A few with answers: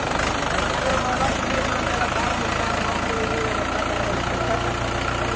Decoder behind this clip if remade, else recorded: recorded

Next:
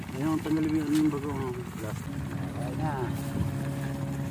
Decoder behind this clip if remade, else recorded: recorded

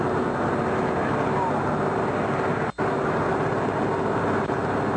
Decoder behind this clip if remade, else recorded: recorded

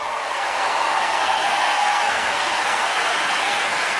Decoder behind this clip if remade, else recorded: remade, codec, SNAC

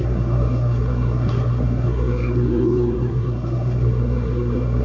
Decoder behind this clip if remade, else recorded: remade, codec, SNAC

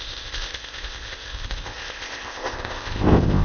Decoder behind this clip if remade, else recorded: remade, codec, ZipCodec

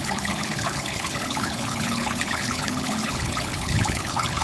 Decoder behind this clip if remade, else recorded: remade, codec, HILCodec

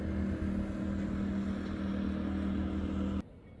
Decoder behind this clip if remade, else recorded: recorded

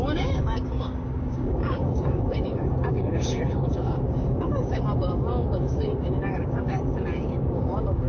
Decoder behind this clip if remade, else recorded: remade, codec, DAC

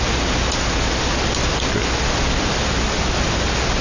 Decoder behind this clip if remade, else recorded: recorded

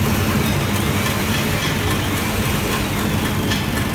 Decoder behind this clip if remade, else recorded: recorded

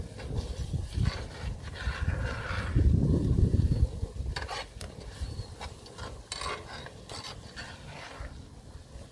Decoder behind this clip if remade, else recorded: recorded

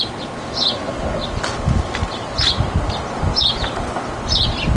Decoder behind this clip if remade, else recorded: recorded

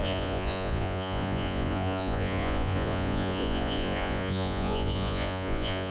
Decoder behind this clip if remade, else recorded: remade, vocoder, Vocos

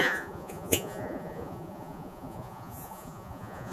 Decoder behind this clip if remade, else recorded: remade, vocoder, Vocos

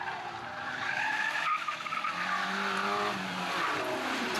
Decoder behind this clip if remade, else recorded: recorded